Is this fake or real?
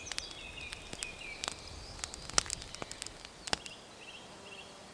real